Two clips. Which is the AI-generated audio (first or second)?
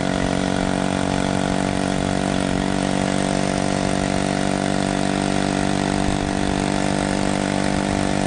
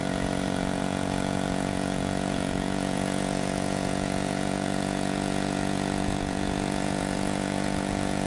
second